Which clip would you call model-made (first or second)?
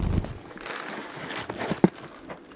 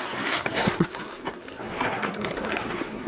second